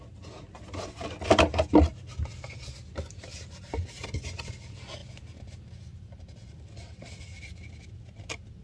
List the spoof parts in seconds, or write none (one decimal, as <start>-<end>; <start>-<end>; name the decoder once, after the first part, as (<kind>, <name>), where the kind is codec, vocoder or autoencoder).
none